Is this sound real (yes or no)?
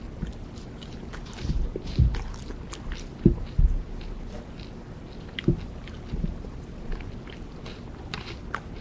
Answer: yes